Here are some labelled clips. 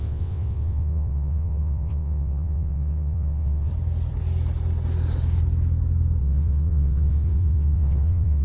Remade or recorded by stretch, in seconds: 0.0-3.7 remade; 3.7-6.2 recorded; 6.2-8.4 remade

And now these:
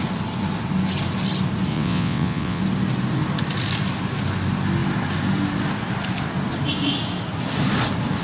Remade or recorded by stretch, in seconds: 0.0-1.7 recorded; 1.7-2.6 remade; 2.6-8.2 recorded